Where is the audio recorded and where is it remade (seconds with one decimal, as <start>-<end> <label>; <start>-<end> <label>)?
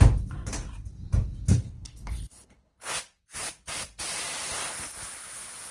0.0-1.5 recorded; 1.5-2.9 remade; 2.9-5.7 recorded